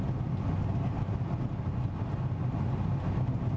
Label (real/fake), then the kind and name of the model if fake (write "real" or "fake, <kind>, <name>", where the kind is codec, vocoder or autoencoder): real